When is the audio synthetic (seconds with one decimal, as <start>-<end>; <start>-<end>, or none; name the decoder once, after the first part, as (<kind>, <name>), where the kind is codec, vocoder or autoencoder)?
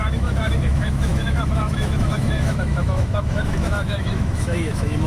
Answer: 0.0-5.1 (autoencoder, DAC-VAE)